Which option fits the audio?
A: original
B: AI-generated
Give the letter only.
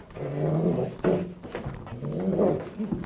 A